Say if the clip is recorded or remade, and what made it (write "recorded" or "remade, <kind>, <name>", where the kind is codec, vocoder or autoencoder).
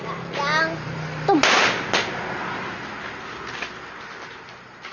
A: recorded